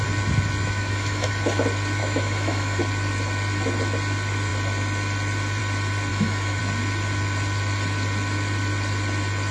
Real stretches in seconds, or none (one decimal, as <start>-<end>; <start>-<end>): 0.0-0.6; 1.3-2.0; 2.8-6.1; 6.6-9.5